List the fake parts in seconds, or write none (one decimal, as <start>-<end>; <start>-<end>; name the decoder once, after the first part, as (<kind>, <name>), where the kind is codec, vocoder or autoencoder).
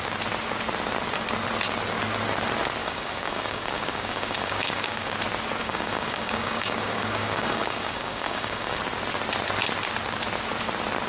2.8-5.1 (codec, DAC); 5.6-8.8